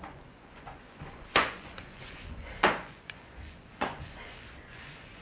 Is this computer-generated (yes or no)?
yes